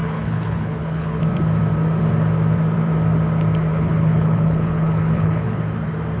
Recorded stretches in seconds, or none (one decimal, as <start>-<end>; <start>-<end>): 1.2-3.7; 5.6-6.2